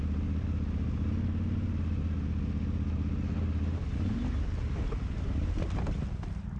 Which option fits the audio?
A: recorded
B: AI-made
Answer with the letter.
A